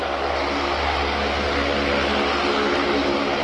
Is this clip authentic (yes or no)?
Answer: yes